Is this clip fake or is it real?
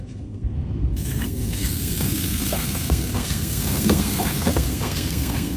fake